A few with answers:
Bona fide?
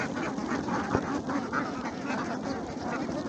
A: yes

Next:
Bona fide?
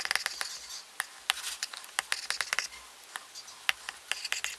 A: yes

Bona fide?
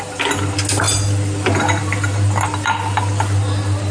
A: yes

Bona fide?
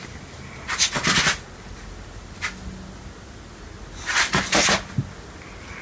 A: yes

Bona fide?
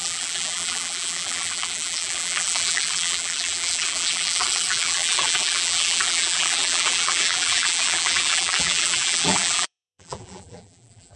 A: no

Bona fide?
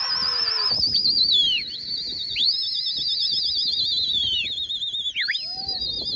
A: no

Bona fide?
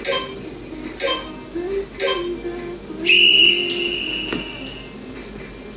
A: yes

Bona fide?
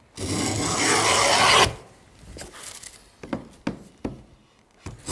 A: yes